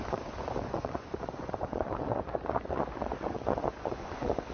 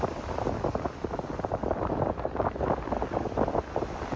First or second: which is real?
second